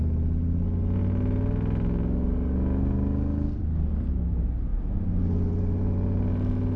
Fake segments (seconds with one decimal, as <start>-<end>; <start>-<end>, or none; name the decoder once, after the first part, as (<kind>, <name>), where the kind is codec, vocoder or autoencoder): none